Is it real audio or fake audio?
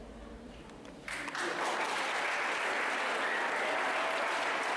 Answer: real